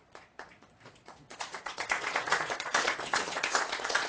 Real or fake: fake